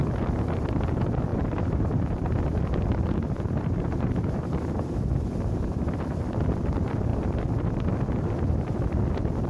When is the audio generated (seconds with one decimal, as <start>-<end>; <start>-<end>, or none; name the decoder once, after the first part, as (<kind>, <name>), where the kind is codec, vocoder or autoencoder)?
1.3-5.2 (vocoder, BigVGAN v2)